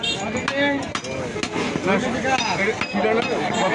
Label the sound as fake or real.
real